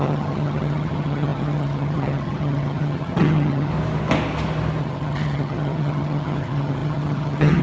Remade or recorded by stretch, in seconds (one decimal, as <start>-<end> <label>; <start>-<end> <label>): 0.0-3.7 remade; 3.7-4.8 recorded; 4.8-7.6 remade